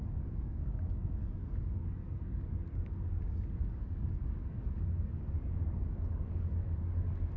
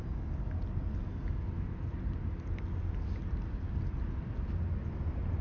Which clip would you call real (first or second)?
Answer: second